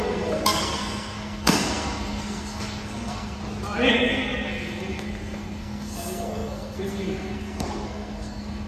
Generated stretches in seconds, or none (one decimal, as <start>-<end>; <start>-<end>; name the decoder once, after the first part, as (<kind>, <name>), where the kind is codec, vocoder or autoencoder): 0.0-3.4 (codec, SNAC); 3.9-8.7